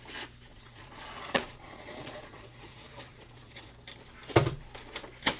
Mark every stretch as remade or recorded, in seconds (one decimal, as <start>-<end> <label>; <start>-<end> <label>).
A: 0.0-0.5 recorded; 0.5-3.7 remade; 3.7-5.4 recorded